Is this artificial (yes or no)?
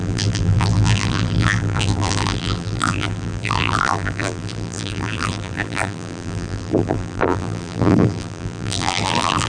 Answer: yes